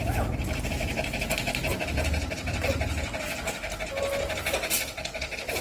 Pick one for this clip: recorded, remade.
recorded